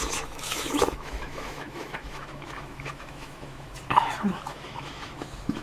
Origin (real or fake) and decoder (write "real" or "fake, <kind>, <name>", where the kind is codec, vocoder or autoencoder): fake, autoencoder, DAC-VAE